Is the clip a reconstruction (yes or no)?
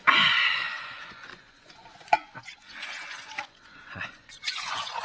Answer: yes